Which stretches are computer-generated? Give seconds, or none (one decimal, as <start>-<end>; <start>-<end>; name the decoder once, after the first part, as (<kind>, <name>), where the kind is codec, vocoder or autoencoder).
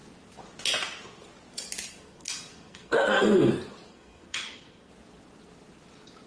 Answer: 1.9-3.5 (codec, SNAC); 3.9-4.9